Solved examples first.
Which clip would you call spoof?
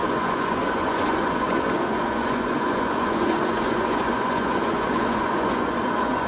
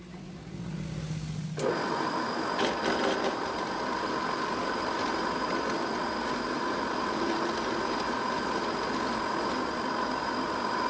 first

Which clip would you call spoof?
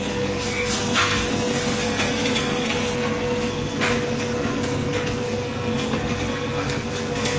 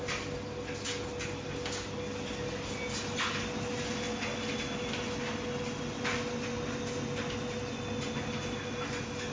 first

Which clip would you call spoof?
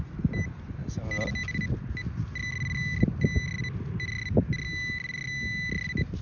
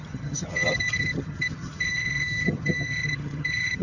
second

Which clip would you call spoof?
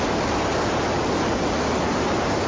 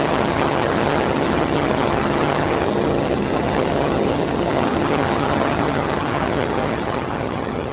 second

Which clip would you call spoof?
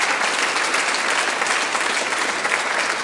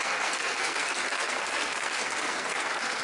second